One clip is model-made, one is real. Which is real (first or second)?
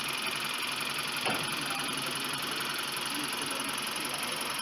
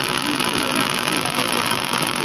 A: first